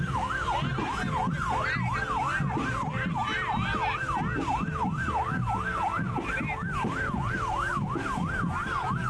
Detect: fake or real real